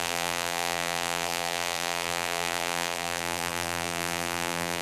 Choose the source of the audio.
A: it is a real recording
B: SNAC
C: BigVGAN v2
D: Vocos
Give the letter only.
C